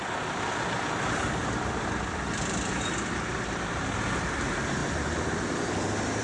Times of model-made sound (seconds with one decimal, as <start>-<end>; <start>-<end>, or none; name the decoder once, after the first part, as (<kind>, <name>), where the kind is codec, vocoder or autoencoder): none